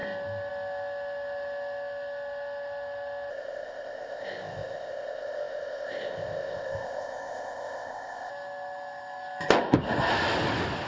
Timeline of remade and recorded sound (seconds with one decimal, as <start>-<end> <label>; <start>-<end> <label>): 0.0-3.3 recorded; 3.3-8.3 remade; 8.3-10.9 recorded

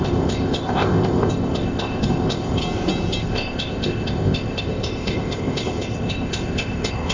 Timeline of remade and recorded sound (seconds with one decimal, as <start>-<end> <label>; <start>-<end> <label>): 0.0-2.6 remade; 2.6-3.2 recorded; 3.2-7.1 remade

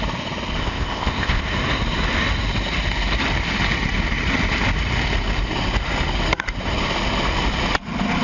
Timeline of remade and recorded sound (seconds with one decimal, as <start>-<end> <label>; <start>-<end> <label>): 0.0-0.6 recorded; 0.6-1.4 remade; 1.4-8.2 recorded

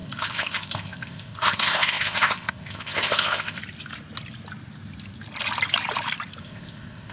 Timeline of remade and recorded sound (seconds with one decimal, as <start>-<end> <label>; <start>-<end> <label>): 0.0-3.6 remade; 3.6-6.4 recorded; 6.4-7.1 remade

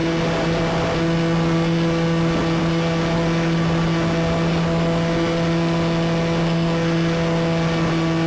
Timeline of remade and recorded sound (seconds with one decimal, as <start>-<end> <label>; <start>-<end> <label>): 0.0-8.3 recorded